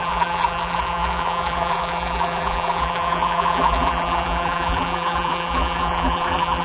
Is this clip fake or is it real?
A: fake